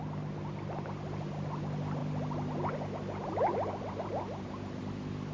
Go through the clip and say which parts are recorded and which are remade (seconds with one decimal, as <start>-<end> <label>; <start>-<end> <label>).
0.0-5.3 recorded